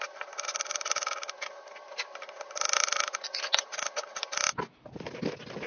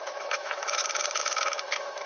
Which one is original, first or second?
first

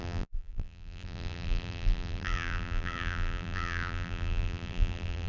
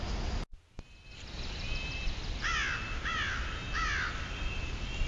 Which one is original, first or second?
second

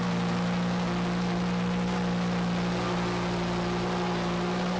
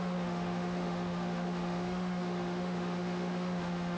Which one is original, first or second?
first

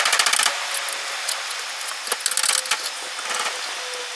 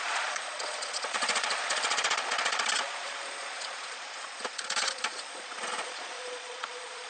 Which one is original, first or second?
first